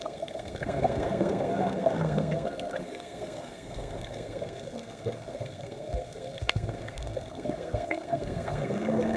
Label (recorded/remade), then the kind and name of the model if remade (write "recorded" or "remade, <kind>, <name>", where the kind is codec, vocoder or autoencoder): remade, codec, SNAC